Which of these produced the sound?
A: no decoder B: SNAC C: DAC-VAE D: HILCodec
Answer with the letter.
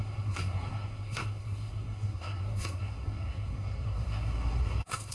B